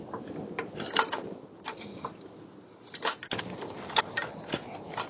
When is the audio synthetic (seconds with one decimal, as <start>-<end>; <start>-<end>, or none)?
none